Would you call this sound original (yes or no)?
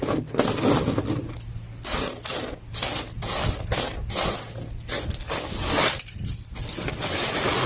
yes